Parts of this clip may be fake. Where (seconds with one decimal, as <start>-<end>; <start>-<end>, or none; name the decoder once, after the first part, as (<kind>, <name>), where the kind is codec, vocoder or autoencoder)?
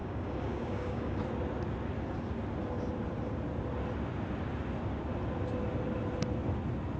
0.0-1.2 (codec, DAC)